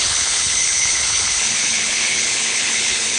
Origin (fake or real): fake